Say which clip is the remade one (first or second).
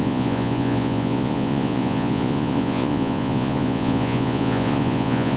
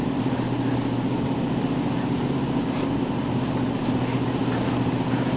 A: first